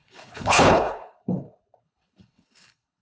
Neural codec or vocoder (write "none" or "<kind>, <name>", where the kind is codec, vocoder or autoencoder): codec, HILCodec